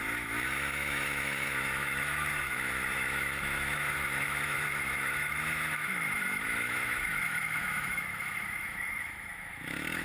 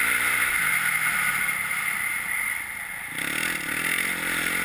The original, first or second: second